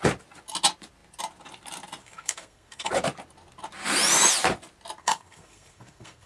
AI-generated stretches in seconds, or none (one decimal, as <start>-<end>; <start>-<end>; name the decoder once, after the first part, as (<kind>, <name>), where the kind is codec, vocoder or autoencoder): 2.0-2.9 (codec, SNAC); 5.0-6.3